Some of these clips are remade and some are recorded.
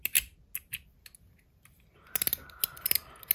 recorded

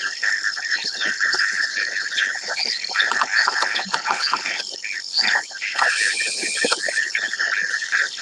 remade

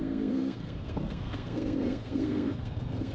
remade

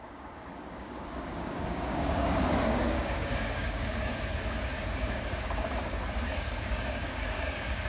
remade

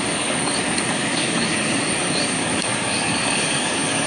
remade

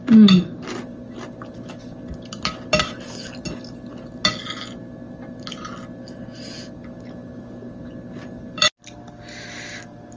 recorded